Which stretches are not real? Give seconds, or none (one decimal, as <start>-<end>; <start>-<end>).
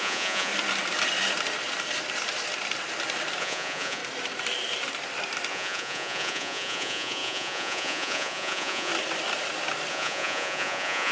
0.0-0.5; 3.4-4.0; 5.5-8.9; 9.9-11.1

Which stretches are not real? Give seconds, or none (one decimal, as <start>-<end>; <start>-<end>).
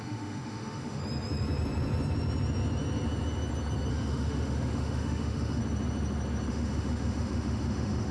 0.0-1.0; 3.9-5.6; 6.5-8.1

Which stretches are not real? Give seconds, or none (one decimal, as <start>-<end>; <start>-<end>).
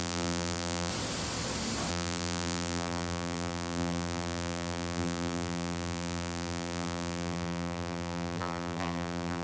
0.0-0.9; 1.9-9.4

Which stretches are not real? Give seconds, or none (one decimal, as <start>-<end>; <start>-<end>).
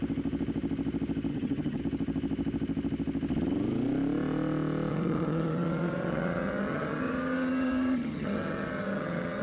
1.3-1.8; 4.9-9.4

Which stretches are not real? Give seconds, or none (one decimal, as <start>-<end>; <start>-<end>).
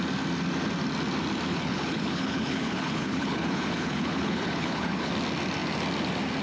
1.5-5.1